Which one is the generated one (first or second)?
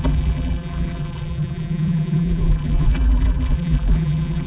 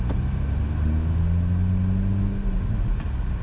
first